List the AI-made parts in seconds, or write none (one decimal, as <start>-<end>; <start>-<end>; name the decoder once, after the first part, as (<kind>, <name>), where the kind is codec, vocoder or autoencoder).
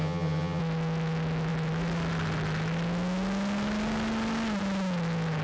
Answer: 0.0-0.6 (vocoder, HiFi-GAN)